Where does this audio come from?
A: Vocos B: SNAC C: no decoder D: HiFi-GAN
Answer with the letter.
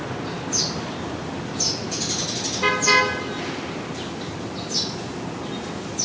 C